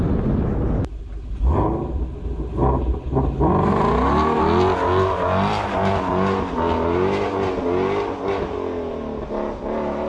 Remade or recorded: recorded